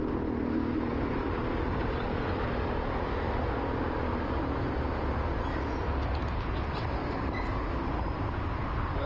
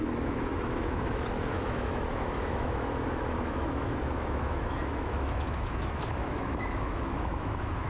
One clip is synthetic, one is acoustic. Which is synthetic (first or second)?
second